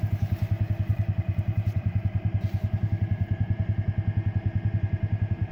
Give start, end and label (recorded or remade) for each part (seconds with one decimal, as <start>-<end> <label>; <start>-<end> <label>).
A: 0.0-0.9 recorded; 0.9-3.6 remade; 3.6-5.5 recorded